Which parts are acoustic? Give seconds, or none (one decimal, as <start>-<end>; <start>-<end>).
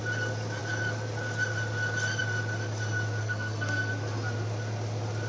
0.0-3.2; 3.9-5.3